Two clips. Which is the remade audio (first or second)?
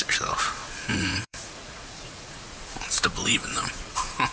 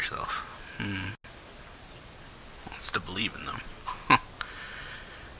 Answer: first